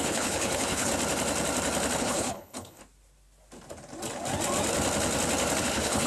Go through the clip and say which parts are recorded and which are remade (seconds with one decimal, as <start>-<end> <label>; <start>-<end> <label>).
0.0-0.9 remade; 0.9-2.0 recorded; 2.0-2.8 remade; 2.8-5.6 recorded; 5.6-6.1 remade

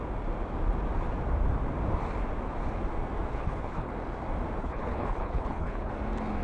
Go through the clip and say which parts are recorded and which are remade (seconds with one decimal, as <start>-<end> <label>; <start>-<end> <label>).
0.0-3.3 recorded; 3.3-3.9 remade; 3.9-4.6 recorded; 4.6-5.9 remade; 5.9-6.4 recorded